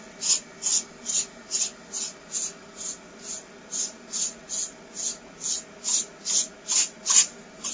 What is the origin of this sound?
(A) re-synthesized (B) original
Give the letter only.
B